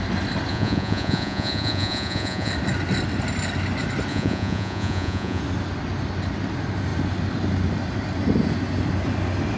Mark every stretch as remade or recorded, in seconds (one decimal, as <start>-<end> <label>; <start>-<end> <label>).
0.0-0.5 recorded; 0.5-2.5 remade; 2.5-4.1 recorded; 4.1-5.4 remade; 5.4-9.6 recorded